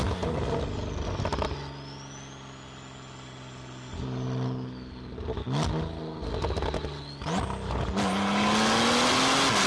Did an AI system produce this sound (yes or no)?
no